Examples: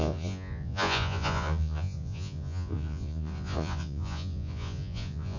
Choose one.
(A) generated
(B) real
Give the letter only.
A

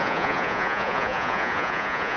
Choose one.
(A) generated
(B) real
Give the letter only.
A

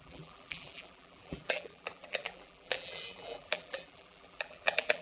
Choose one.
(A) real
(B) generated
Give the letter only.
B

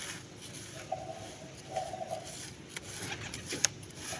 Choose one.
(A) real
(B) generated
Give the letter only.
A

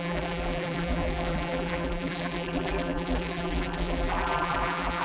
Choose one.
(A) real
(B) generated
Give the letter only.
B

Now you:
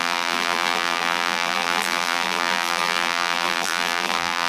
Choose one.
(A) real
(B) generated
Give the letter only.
B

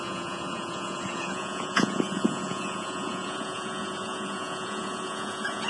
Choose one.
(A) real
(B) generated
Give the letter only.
B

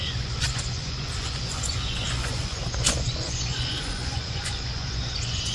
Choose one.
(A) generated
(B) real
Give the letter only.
A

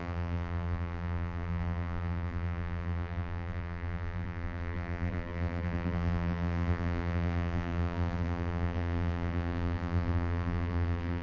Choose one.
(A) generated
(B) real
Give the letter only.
A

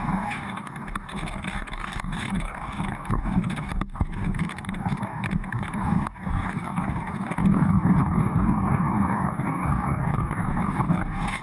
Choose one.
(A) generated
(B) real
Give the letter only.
A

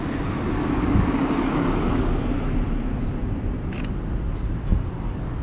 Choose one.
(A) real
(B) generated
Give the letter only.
A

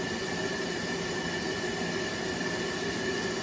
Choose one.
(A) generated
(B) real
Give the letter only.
B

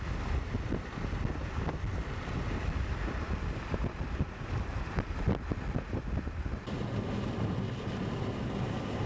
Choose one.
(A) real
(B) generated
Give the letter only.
A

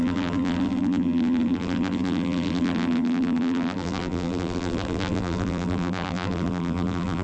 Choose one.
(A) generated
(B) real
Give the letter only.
A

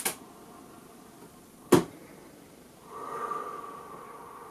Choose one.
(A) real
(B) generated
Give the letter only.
A